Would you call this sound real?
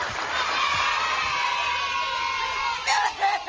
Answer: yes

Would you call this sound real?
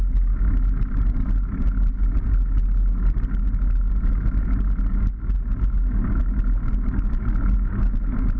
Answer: yes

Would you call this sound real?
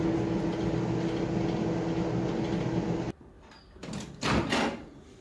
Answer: yes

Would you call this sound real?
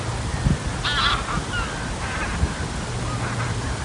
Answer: yes